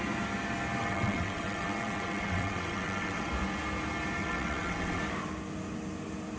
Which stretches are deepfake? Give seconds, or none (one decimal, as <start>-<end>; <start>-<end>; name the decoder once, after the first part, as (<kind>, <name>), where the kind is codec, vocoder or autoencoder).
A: 0.8-3.3 (vocoder, WaveNeXt); 4.2-5.0